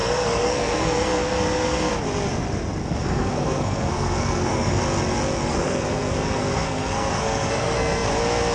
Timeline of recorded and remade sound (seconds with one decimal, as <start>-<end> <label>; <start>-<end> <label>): 0.0-1.9 remade; 1.9-2.8 recorded; 2.8-4.8 remade; 4.8-5.5 recorded; 5.5-8.1 remade; 8.1-8.5 recorded

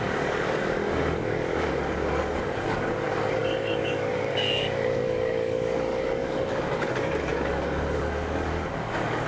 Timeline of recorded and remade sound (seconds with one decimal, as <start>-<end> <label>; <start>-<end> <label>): 0.0-9.3 remade

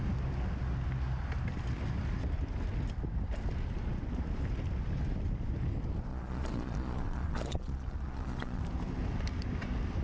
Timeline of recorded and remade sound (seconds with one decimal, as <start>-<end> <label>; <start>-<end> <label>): 0.0-6.1 recorded; 6.1-8.6 remade; 8.6-10.0 recorded